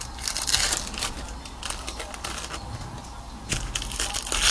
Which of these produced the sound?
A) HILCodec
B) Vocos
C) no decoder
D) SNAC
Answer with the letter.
C